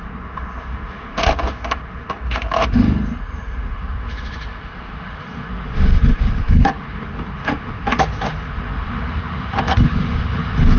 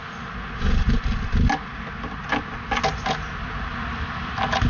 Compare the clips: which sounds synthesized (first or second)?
first